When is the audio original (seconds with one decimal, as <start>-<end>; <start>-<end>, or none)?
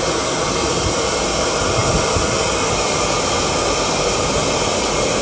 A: 0.0-5.2